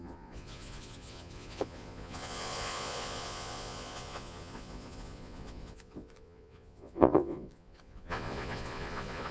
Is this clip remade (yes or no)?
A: yes